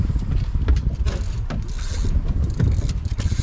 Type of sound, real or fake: real